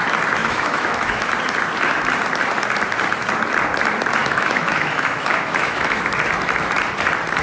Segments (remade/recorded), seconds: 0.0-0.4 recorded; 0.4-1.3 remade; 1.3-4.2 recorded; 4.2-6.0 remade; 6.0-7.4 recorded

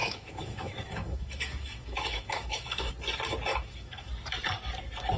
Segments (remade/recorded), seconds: 0.0-2.9 remade; 2.9-3.5 recorded; 3.5-4.1 remade; 4.1-5.2 recorded

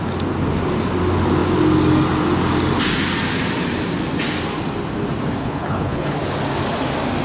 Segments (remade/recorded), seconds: 0.0-5.4 recorded; 5.4-6.2 remade; 6.2-7.2 recorded

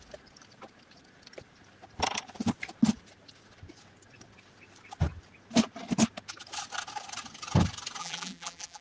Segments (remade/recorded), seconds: 0.0-8.0 recorded; 8.0-8.8 remade

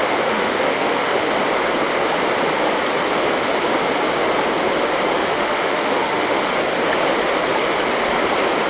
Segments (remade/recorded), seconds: 0.0-1.3 remade; 1.3-5.2 recorded; 5.2-6.4 remade; 6.4-8.7 recorded

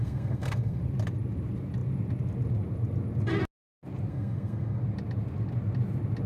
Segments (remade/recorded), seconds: 0.0-0.8 remade; 0.8-4.1 recorded; 4.1-4.8 remade; 4.8-6.3 recorded

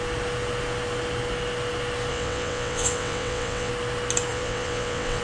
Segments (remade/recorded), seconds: 0.0-2.1 recorded; 2.1-3.7 remade; 3.7-4.3 recorded; 4.3-5.2 remade